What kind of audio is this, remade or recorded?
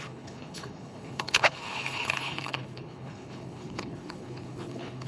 remade